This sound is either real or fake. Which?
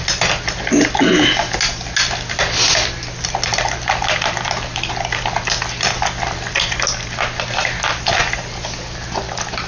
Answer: real